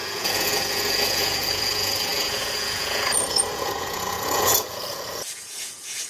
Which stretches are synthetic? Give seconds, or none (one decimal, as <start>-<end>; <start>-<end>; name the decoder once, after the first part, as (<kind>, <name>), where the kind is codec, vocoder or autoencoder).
0.0-6.1 (vocoder, Vocos)